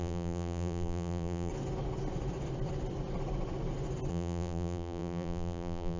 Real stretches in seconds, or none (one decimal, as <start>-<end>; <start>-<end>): 1.5-4.1